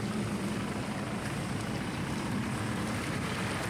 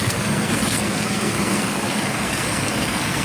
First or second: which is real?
first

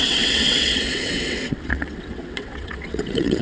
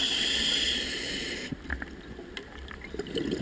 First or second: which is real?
second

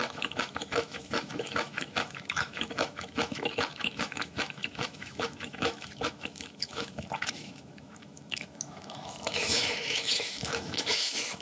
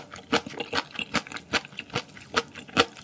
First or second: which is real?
second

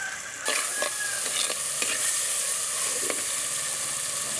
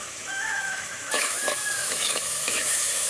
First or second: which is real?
first